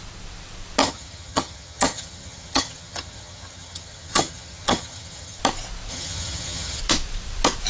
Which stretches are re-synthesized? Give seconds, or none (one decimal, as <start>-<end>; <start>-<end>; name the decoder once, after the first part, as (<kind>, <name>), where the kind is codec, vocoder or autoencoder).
0.8-5.4 (vocoder, HiFi-GAN); 5.9-6.8